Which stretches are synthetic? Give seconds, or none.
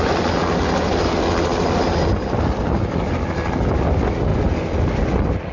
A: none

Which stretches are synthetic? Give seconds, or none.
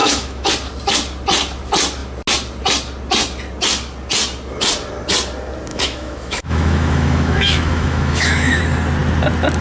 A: 0.0-0.5; 5.7-8.6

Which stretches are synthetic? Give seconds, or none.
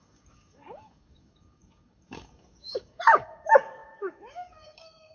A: 0.0-5.1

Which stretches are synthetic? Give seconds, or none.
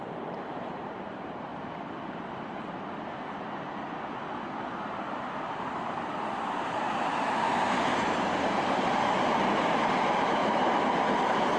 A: 0.0-1.5; 4.6-10.4; 11.2-11.6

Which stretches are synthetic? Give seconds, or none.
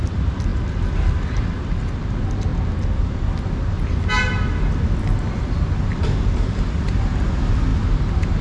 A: none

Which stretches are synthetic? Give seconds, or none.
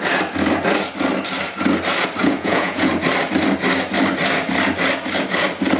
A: 2.2-2.9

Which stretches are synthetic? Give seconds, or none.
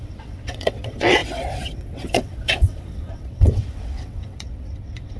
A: 0.0-5.2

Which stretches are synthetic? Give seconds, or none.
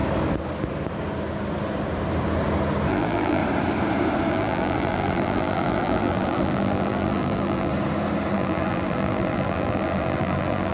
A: 2.9-3.4; 4.3-7.7; 8.3-10.7